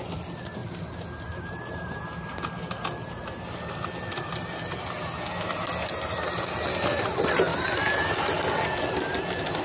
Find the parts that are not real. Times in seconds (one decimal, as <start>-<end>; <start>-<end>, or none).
none